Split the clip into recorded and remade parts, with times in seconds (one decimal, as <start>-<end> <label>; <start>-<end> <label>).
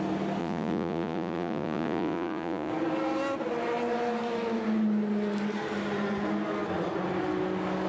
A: 0.0-0.4 recorded; 0.4-2.7 remade; 2.7-7.9 recorded